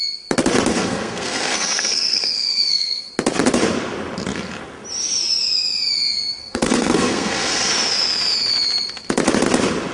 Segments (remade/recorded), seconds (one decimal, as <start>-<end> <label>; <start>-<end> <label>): 0.0-0.7 recorded; 0.7-3.1 remade; 3.1-6.4 recorded; 6.4-7.7 remade; 7.7-9.9 recorded